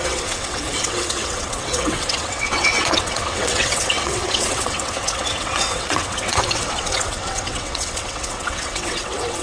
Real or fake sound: fake